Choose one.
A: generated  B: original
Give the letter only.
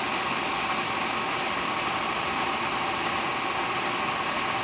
B